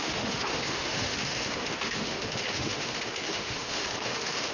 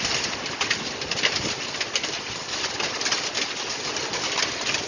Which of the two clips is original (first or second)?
second